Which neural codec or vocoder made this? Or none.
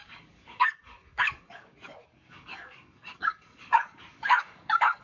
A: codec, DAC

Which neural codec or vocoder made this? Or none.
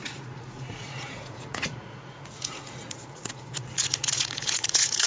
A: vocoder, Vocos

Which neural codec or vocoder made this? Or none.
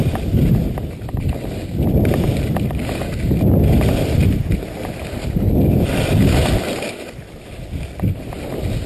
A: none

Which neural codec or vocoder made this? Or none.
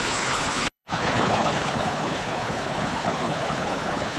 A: codec, HILCodec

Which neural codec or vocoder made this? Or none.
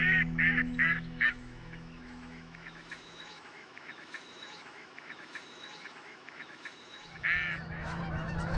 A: autoencoder, DAC-VAE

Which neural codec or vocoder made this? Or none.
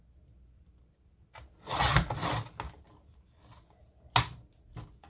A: none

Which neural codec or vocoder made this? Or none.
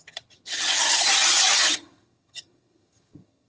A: vocoder, HiFi-GAN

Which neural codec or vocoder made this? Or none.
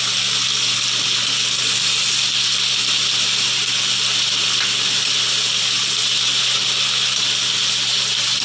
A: none